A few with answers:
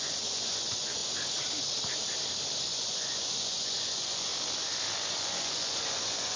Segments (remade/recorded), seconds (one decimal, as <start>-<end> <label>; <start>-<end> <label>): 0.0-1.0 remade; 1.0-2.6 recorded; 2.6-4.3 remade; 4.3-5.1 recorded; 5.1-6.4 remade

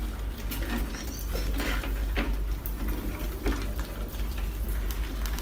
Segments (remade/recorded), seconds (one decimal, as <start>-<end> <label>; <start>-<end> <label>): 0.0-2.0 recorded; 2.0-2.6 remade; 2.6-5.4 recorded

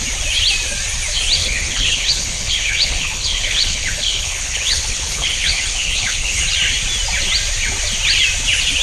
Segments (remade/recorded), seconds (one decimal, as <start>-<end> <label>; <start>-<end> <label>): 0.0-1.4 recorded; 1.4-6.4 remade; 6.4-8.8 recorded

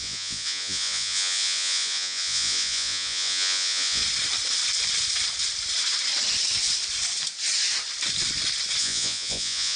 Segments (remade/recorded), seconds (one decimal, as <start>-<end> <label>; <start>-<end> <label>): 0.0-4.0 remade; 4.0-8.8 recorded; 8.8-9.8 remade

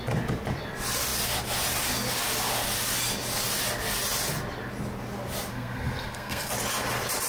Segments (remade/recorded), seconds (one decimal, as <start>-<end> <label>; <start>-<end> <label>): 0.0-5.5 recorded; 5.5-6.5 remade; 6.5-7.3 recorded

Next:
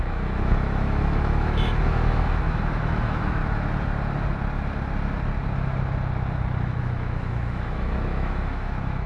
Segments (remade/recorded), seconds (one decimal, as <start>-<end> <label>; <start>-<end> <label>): 0.0-3.4 remade; 3.4-6.6 recorded; 6.6-9.1 remade

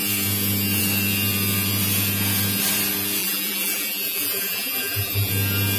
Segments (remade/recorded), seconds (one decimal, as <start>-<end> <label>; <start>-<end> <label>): 0.0-3.2 recorded; 3.2-5.3 remade; 5.3-5.8 recorded